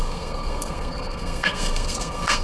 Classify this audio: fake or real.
fake